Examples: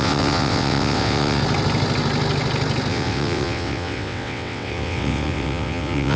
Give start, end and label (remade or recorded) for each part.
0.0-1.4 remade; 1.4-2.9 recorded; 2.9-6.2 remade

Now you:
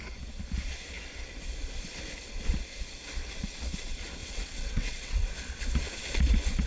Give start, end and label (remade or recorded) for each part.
0.0-4.2 recorded; 4.2-5.3 remade; 5.3-6.7 recorded

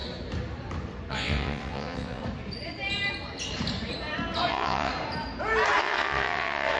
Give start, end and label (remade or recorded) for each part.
0.0-1.1 recorded; 1.1-2.2 remade; 2.2-4.5 recorded; 4.5-4.9 remade; 4.9-5.8 recorded; 5.8-6.8 remade

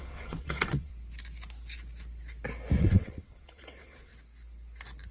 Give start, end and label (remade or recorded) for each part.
0.0-0.9 remade; 0.9-2.8 recorded; 2.8-4.1 remade; 4.1-5.1 recorded

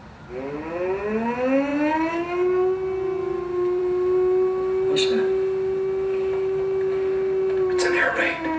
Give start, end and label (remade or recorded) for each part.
0.0-8.6 recorded

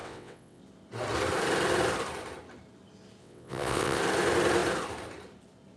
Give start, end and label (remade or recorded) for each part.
0.0-0.6 remade; 0.6-3.2 recorded; 3.2-4.0 remade; 4.0-5.8 recorded

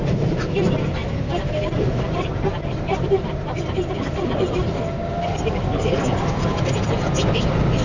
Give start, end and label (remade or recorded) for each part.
0.0-7.8 recorded

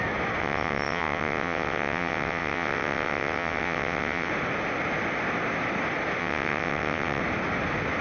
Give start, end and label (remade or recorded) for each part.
0.0-0.4 recorded; 0.4-4.3 remade; 4.3-6.2 recorded; 6.2-7.2 remade; 7.2-8.0 recorded